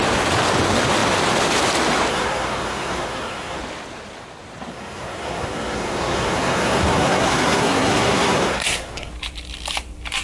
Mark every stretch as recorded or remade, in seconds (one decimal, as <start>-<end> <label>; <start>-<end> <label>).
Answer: 0.0-2.1 recorded; 2.1-3.6 remade; 3.6-4.7 recorded; 4.7-9.1 remade; 9.1-10.2 recorded